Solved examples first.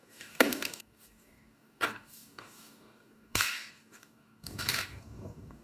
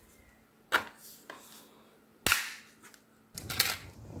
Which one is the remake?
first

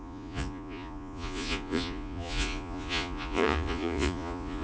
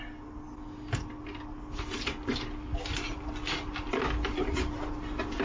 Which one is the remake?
first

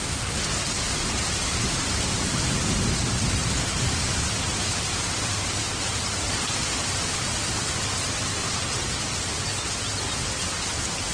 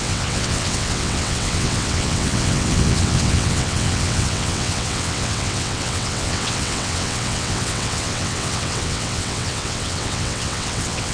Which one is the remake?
second